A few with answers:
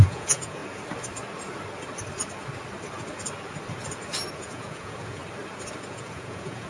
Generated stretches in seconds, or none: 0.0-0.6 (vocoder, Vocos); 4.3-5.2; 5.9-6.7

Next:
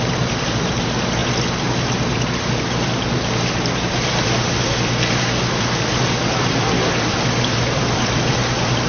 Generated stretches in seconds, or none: 0.0-1.2 (vocoder, BigVGAN v2); 5.6-8.4

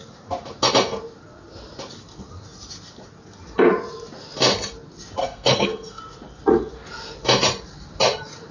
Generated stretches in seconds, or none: 5.2-6.0 (codec, SNAC)

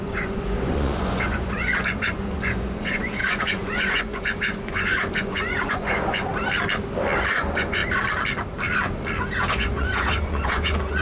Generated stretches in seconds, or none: 0.0-6.3 (vocoder, Vocos); 7.3-7.8; 9.5-11.0

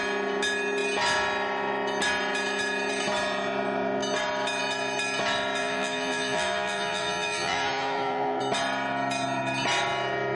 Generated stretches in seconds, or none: 5.6-8.4 (vocoder, BigVGAN v2)

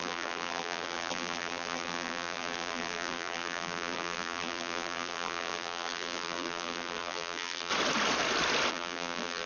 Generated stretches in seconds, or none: 0.0-7.7 (vocoder, BigVGAN v2); 8.7-9.5

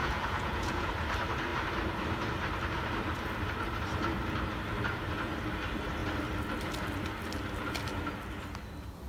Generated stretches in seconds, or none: 0.0-0.9 (vocoder, Vocos)

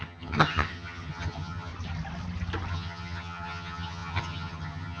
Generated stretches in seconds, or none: 0.0-1.7 (vocoder, HiFi-GAN); 2.7-5.0